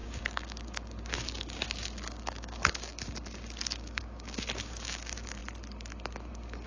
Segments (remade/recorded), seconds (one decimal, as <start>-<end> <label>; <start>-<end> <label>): 0.0-5.4 remade; 5.4-6.3 recorded; 6.3-6.7 remade